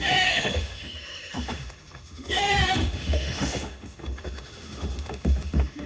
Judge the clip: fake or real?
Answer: fake